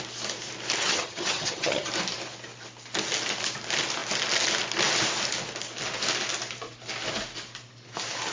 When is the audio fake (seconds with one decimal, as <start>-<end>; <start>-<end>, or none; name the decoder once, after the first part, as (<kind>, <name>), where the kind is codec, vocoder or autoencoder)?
0.8-1.9 (vocoder, HiFi-GAN)